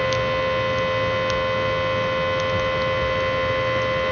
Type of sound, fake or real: real